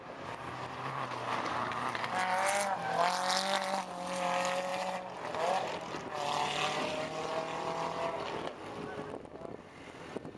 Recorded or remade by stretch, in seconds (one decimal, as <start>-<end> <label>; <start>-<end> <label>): 0.0-10.4 recorded